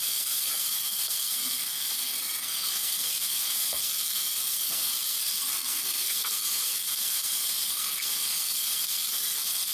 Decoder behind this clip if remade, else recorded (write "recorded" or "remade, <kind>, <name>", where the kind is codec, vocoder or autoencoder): remade, codec, SNAC